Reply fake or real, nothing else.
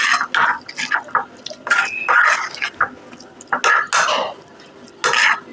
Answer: real